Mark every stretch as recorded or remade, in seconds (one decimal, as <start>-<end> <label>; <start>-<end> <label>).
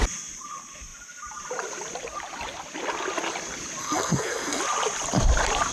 0.0-3.8 recorded; 3.8-4.6 remade; 4.6-5.7 recorded